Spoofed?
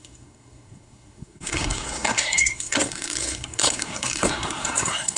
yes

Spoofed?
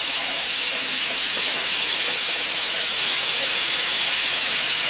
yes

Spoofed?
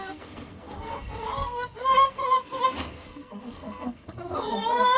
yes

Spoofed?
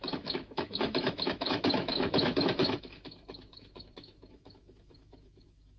yes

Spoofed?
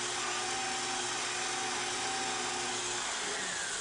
no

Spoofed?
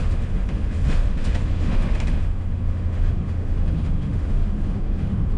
yes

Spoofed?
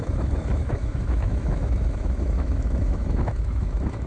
yes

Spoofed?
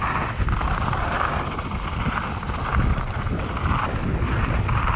no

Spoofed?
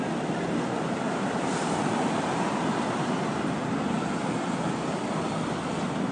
no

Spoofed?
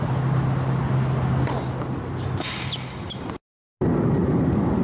no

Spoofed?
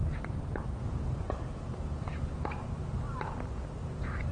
yes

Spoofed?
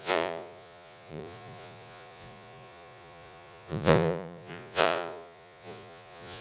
yes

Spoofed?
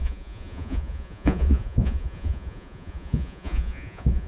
yes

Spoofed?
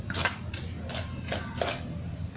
no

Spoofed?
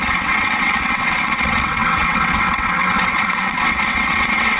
yes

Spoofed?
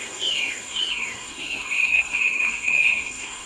yes